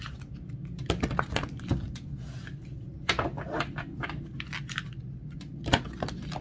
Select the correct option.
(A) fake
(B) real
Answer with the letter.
B